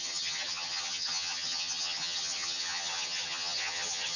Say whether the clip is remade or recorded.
remade